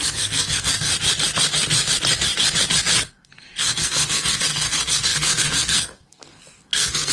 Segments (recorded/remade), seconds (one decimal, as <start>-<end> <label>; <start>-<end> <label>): 0.0-0.9 remade; 0.9-3.1 recorded; 3.1-7.1 remade